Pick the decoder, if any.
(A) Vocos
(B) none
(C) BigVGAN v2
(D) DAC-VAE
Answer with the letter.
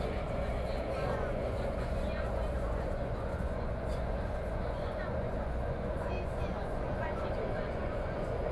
A